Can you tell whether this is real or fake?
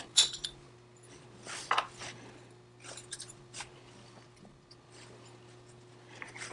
real